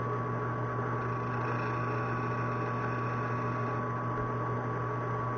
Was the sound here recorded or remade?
recorded